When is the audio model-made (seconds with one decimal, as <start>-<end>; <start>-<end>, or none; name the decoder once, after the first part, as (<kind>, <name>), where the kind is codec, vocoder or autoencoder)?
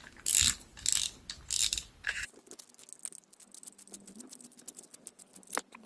none